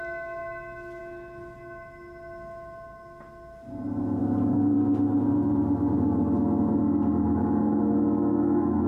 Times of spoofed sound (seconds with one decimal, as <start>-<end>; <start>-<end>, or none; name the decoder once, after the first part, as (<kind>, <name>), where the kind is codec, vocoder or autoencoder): none